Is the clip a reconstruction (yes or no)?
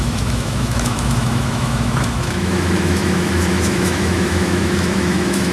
yes